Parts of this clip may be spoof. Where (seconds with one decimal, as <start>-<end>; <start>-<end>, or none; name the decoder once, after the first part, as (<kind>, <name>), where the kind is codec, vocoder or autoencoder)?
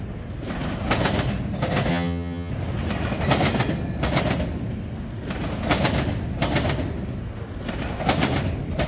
1.9-2.5 (vocoder, HiFi-GAN)